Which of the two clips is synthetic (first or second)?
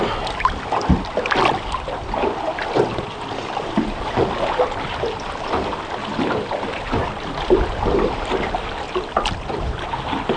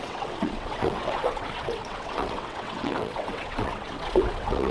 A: second